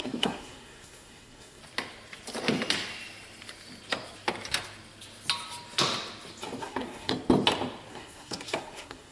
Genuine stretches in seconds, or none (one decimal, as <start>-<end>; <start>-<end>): 1.6-6.6; 7.1-7.9